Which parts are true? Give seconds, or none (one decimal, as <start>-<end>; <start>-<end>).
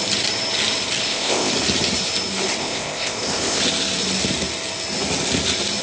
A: 0.0-1.0; 1.5-2.6; 3.6-5.8